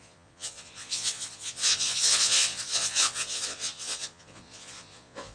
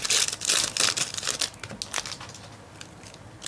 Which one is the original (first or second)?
second